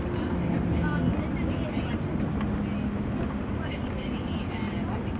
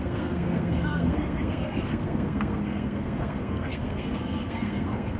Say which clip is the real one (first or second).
first